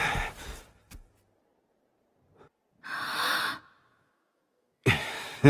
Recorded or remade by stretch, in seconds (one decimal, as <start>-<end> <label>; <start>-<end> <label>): 0.0-3.1 recorded; 3.1-5.5 remade